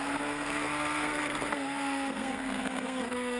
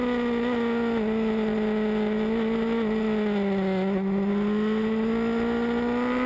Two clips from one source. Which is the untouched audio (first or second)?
second